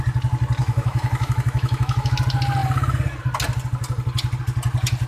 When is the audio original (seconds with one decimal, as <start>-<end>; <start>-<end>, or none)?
0.0-0.6; 2.1-5.1